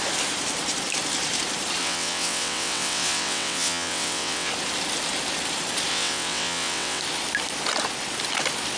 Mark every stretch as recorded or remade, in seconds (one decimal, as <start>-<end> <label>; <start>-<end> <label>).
0.0-1.8 recorded; 1.8-4.5 remade; 4.5-5.9 recorded; 5.9-7.0 remade; 7.0-8.8 recorded